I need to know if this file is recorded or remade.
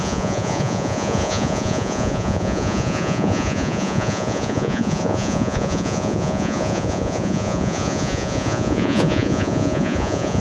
remade